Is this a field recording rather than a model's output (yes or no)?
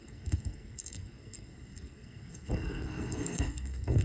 no